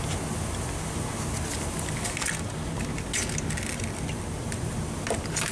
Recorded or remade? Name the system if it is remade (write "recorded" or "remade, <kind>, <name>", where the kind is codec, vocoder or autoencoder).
recorded